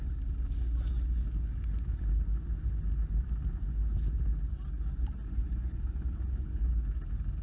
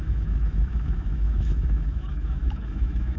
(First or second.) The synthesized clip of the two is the second